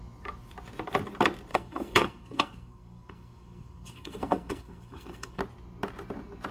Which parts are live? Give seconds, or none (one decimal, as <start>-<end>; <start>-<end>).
0.0-1.5; 5.4-6.5